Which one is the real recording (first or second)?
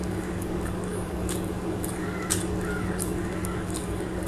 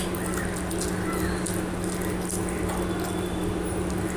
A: second